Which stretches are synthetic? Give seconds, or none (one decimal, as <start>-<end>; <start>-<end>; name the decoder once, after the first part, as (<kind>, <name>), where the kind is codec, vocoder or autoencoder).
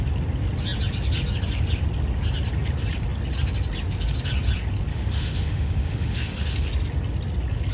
4.9-6.7 (autoencoder, DAC-VAE)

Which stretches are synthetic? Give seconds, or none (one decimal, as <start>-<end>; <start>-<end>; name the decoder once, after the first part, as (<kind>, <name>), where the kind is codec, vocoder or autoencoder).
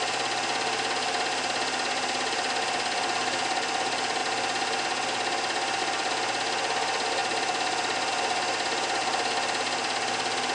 none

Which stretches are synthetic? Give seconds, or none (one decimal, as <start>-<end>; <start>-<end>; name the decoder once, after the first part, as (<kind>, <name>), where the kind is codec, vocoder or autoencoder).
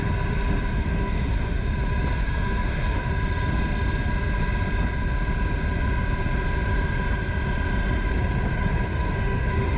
0.7-1.7 (autoencoder, DAC-VAE); 2.1-3.1; 8.9-9.8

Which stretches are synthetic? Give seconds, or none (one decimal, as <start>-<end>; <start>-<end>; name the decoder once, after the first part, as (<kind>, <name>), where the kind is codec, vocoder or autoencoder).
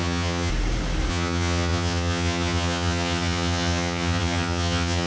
0.0-0.5 (vocoder, HiFi-GAN); 1.1-5.1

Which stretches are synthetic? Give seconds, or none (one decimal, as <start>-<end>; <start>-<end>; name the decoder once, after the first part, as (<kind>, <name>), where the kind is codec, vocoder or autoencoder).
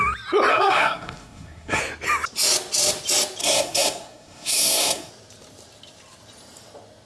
0.5-1.8 (codec, SNAC); 3.4-5.1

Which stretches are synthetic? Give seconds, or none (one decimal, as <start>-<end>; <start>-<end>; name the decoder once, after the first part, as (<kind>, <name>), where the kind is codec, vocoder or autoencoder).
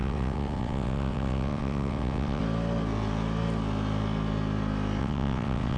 0.0-2.4 (vocoder, WaveNeXt); 5.0-5.8